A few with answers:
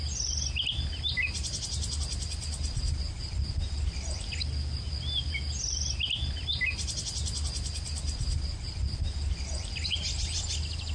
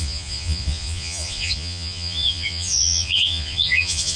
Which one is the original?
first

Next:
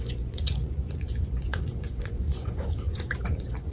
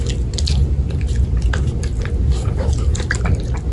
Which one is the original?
second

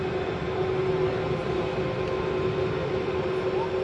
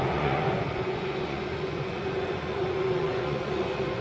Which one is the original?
first